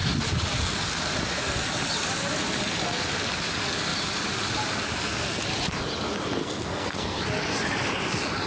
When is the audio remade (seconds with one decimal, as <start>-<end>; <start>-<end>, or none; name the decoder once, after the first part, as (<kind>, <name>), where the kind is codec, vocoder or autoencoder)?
6.4-7.2 (codec, SNAC)